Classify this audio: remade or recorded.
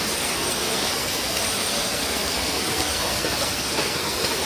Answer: remade